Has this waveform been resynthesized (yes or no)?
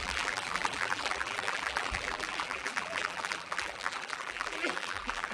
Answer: yes